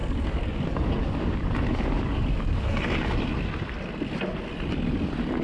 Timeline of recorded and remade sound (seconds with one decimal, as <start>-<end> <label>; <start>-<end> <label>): 0.0-3.1 remade; 3.1-5.4 recorded